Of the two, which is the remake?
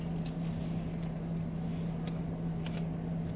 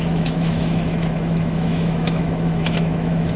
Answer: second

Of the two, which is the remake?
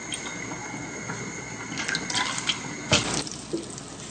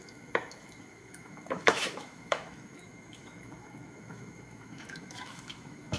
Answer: second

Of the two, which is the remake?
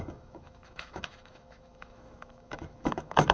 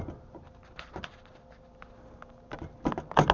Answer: first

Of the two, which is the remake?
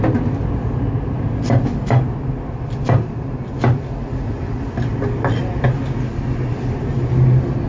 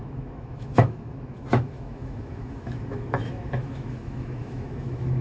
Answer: second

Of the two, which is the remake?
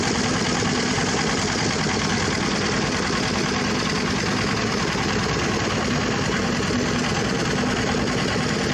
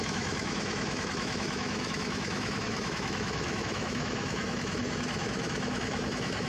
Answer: second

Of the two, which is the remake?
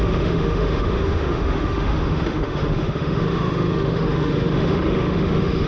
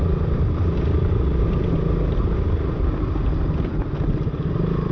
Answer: first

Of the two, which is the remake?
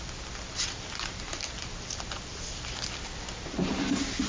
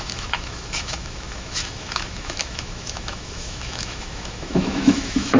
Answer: second